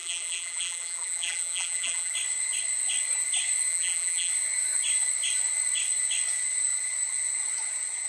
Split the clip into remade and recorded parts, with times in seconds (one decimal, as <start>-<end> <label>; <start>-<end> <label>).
0.0-2.1 remade; 2.1-3.7 recorded; 3.7-4.3 remade; 4.3-8.1 recorded